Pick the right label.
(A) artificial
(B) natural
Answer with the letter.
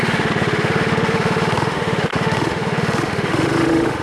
A